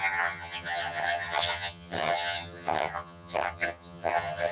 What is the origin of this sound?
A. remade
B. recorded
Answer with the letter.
A